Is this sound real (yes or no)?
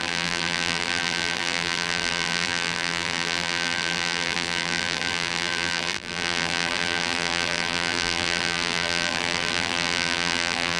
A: no